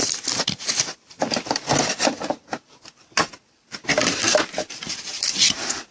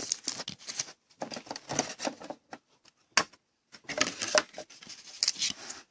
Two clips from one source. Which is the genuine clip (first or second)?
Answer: second